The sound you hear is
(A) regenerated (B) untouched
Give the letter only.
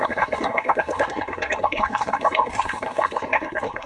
A